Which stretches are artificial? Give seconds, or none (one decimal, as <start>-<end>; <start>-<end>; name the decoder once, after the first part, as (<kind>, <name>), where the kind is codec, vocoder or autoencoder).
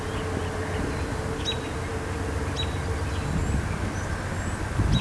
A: none